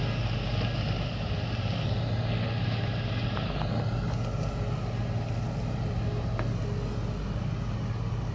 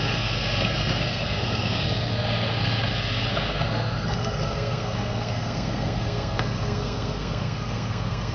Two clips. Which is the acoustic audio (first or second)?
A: first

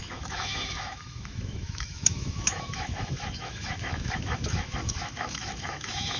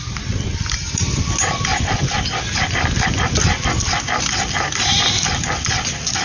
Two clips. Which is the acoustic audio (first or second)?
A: second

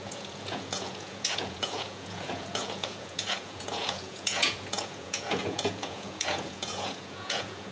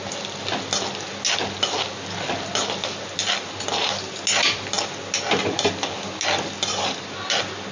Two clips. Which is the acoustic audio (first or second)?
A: second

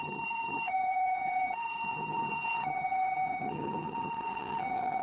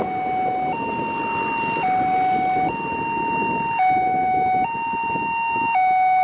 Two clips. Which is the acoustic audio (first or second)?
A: second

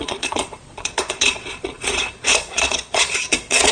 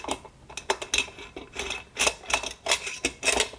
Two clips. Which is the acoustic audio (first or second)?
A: second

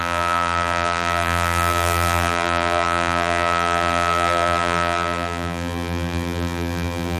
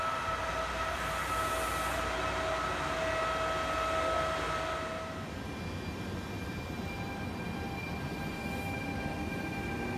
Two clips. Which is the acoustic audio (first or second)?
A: second